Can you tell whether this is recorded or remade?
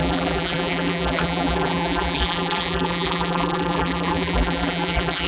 remade